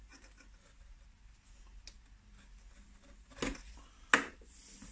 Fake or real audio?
real